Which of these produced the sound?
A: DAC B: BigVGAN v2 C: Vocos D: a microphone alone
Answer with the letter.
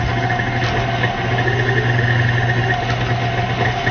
D